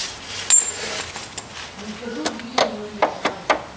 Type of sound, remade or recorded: recorded